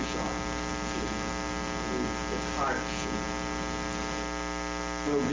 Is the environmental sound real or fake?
real